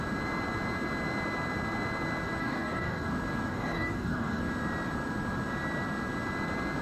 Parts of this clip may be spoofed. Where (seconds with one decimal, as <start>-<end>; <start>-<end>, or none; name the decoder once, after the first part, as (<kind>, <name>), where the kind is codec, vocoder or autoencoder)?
2.4-3.1 (codec, DAC); 3.5-4.4